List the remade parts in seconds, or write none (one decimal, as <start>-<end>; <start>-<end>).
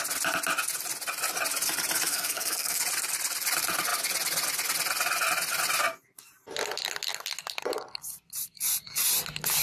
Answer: 2.1-2.8